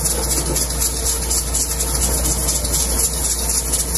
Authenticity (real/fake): real